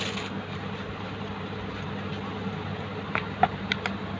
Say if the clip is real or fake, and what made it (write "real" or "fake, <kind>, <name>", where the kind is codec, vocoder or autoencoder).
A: real